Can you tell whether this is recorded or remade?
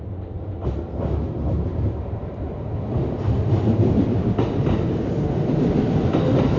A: recorded